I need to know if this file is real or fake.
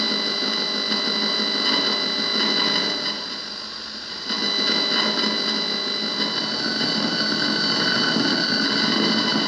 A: real